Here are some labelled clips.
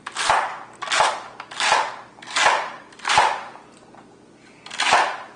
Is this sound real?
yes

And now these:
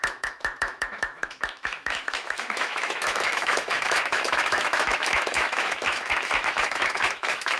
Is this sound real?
no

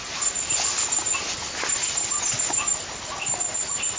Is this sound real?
yes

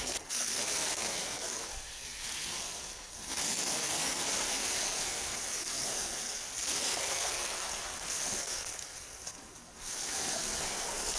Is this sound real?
no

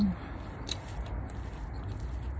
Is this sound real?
yes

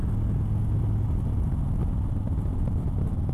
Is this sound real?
yes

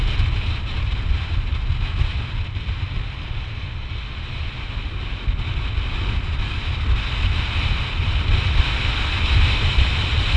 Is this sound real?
yes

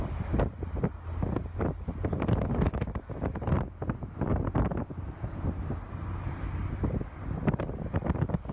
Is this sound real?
yes